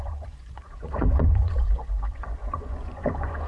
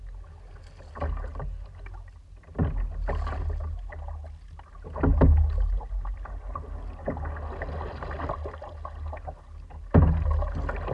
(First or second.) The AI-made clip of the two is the first